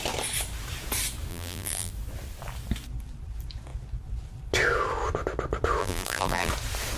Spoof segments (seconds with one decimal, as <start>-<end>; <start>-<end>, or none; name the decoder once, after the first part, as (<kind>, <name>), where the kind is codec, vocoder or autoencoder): 1.3-1.9 (vocoder, BigVGAN v2); 5.8-6.5